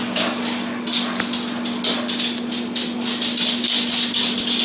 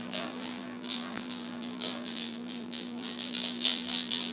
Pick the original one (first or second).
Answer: first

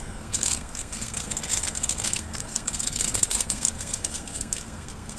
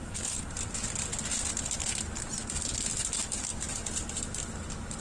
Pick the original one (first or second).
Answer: second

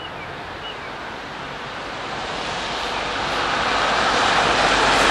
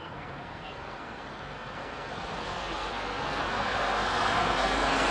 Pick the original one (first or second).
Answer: first